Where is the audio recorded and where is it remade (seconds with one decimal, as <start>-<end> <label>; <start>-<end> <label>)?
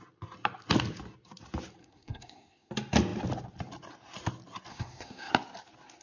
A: 0.0-1.8 recorded; 1.8-2.7 remade; 2.7-4.7 recorded; 4.7-5.3 remade; 5.3-6.0 recorded